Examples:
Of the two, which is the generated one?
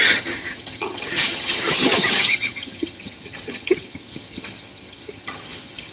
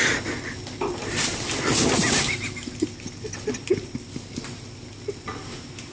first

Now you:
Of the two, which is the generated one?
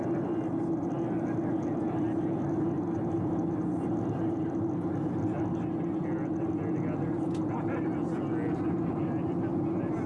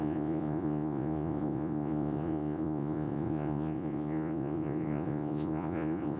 second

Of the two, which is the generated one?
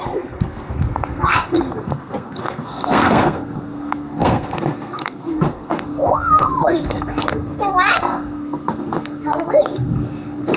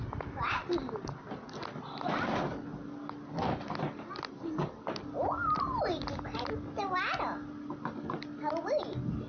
first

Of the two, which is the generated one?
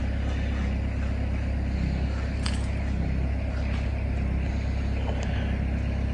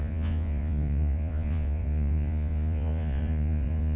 second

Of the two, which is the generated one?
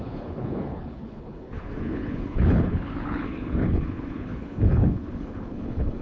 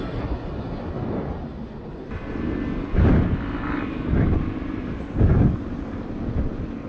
first